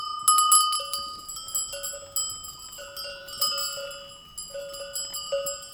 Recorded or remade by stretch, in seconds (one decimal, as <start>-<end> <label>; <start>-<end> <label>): 0.0-5.7 recorded